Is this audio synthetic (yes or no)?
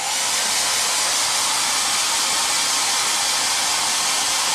no